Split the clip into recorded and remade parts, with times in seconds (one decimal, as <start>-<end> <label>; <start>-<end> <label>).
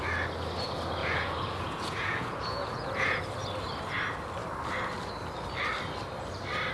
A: 0.0-1.0 recorded; 1.0-3.2 remade; 3.2-6.7 recorded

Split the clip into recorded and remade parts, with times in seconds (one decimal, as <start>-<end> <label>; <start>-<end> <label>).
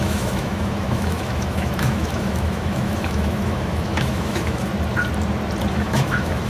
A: 0.0-4.7 remade; 4.7-5.7 recorded; 5.7-6.5 remade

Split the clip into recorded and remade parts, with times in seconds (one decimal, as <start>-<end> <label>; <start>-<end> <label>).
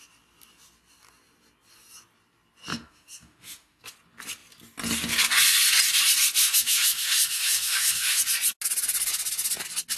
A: 0.0-2.7 recorded; 2.7-3.8 remade; 3.8-6.4 recorded; 6.4-8.2 remade; 8.2-10.0 recorded